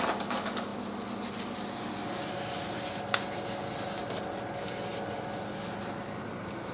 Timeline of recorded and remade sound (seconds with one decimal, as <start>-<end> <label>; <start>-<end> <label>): 0.0-6.7 recorded